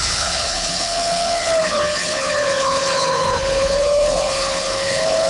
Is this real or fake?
fake